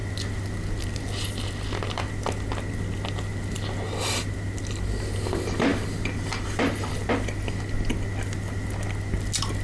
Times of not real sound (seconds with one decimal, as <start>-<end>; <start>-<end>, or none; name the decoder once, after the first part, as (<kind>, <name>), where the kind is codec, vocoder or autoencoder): none